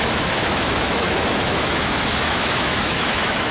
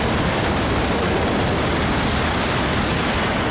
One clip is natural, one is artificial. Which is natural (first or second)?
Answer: second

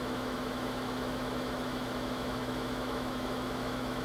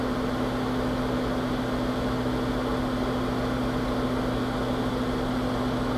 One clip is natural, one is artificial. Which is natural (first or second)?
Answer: second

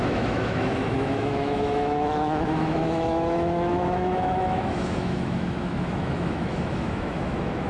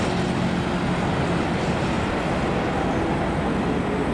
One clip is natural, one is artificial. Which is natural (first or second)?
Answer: second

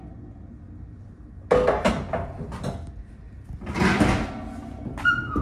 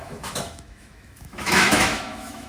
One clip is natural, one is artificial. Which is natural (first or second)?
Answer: first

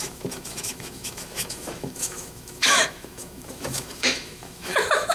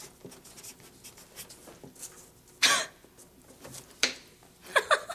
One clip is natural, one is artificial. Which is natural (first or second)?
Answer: second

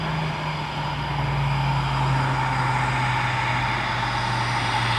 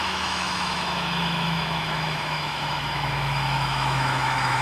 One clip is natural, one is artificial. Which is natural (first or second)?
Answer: first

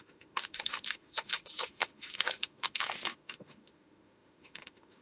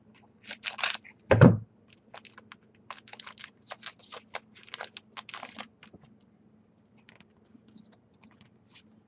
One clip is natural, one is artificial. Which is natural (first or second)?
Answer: second